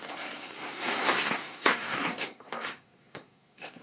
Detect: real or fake fake